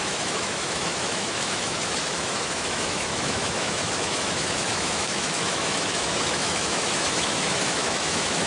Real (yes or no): no